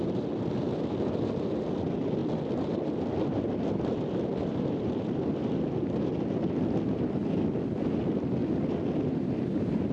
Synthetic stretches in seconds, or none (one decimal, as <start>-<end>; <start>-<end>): none